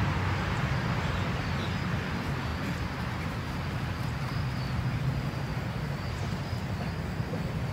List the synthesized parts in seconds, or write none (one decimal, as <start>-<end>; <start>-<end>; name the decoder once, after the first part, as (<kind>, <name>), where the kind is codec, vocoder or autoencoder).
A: none